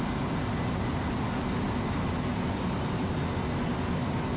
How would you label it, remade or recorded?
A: recorded